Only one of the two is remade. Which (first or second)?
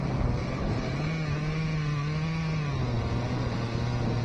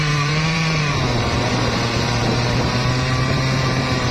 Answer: second